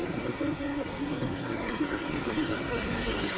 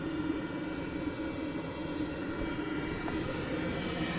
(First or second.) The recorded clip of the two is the second